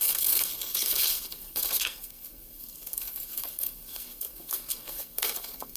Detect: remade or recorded remade